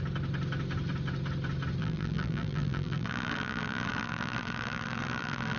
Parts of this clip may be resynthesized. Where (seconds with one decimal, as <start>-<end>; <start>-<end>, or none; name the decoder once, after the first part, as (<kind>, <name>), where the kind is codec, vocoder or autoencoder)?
1.8-5.6 (vocoder, BigVGAN v2)